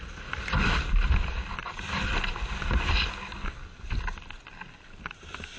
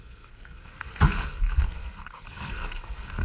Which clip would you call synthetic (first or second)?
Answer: second